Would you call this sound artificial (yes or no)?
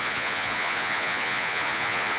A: yes